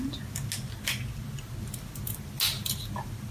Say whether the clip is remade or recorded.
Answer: recorded